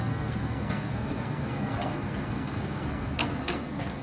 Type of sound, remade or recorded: remade